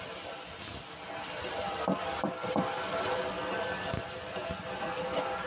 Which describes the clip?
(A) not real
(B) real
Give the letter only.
B